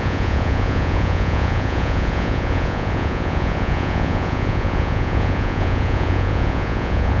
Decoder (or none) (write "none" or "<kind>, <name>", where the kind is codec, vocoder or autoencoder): vocoder, Vocos